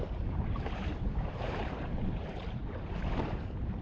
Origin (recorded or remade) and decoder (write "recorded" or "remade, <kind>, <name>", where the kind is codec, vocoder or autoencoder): remade, vocoder, BigVGAN v2